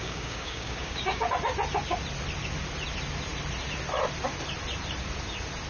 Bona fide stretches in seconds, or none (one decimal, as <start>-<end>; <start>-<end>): 1.2-5.7

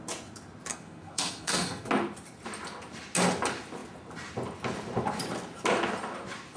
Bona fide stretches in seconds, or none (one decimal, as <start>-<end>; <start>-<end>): 0.0-0.7; 1.9-6.6